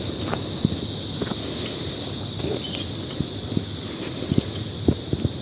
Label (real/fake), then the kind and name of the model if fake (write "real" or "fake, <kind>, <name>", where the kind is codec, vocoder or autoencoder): real